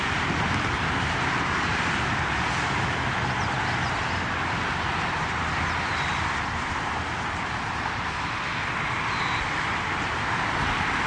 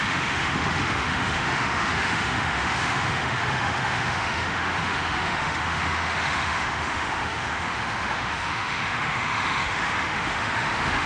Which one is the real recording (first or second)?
first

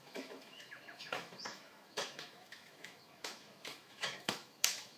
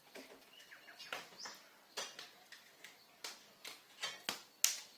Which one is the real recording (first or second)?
second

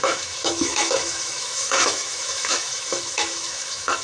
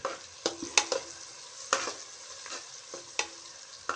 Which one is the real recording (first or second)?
second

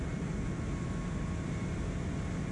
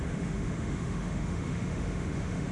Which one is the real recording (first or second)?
first